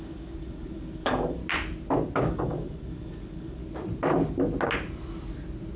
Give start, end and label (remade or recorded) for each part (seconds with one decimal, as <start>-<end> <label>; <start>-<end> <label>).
0.0-1.4 remade; 1.4-2.2 recorded; 2.2-3.6 remade; 3.6-5.8 recorded